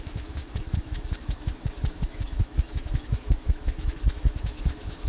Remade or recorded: remade